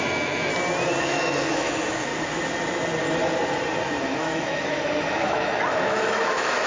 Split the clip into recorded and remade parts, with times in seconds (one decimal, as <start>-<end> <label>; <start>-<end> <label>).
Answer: 0.0-0.5 remade; 0.5-1.0 recorded; 1.0-2.1 remade; 2.1-4.0 recorded; 4.0-6.7 remade